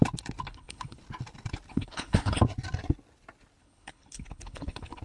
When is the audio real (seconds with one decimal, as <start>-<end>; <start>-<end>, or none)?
0.0-0.5; 1.0-1.7; 2.4-3.6